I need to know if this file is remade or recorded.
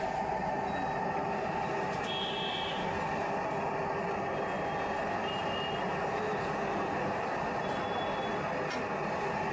recorded